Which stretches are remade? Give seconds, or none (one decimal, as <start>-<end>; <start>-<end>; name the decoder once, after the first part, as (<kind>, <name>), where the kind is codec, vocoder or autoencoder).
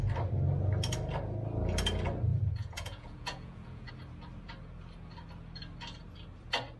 2.3-3.9 (vocoder, Vocos)